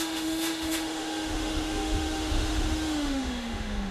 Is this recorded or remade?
remade